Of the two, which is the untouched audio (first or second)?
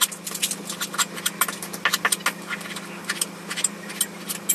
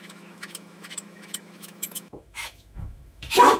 first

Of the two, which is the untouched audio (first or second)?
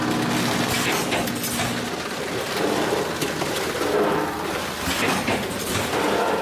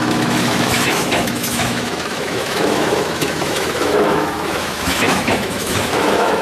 first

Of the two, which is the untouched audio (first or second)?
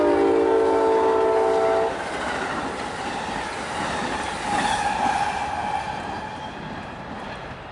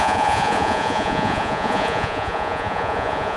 first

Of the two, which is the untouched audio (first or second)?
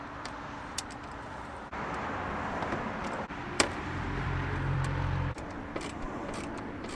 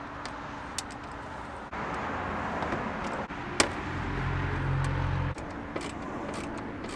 second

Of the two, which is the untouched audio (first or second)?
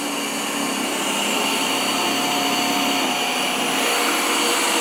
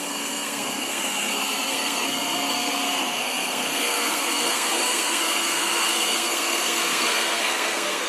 first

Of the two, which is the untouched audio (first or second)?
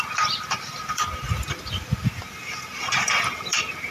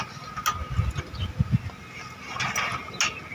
second